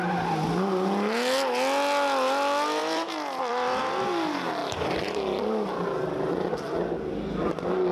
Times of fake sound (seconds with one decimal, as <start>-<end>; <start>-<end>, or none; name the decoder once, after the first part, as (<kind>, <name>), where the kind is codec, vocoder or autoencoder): 2.8-3.8 (vocoder, BigVGAN v2); 4.6-5.7